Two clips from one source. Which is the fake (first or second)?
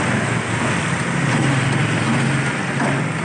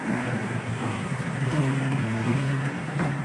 second